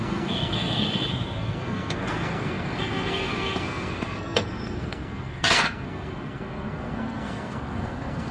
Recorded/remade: remade